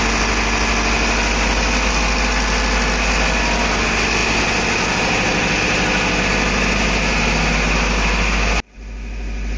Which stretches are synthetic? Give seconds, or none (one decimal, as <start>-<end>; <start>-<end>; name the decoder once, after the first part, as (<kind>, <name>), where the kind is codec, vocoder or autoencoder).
none